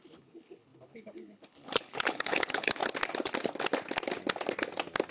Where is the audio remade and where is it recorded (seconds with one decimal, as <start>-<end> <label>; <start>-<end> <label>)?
0.0-2.8 remade; 2.8-5.1 recorded